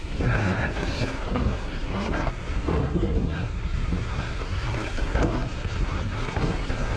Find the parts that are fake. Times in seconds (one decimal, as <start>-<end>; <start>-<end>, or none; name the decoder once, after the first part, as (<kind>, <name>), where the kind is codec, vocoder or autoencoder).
0.0-7.0 (codec, SNAC)